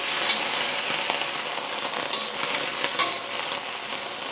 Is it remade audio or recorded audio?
recorded